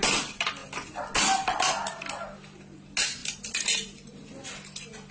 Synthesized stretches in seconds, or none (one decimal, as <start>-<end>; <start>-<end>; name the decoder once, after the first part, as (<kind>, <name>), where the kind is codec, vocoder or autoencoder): none